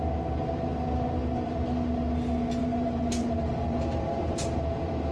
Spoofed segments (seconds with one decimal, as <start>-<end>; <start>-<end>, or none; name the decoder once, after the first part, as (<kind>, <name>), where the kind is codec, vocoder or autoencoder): 2.6-4.5 (vocoder, BigVGAN v2)